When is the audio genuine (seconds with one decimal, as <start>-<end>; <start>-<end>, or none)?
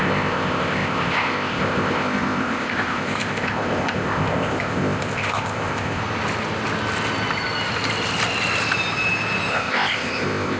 6.0-9.5